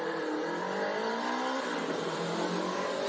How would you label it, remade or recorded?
recorded